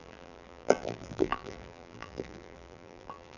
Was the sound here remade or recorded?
remade